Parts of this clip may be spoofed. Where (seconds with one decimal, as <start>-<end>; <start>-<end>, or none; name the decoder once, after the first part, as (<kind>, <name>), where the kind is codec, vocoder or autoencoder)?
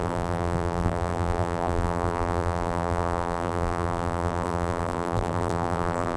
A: 0.0-6.2 (vocoder, BigVGAN v2)